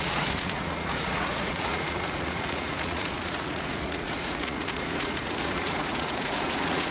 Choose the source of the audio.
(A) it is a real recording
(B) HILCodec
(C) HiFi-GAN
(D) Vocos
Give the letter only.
D